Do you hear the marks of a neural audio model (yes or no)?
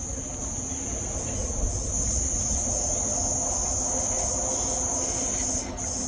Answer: no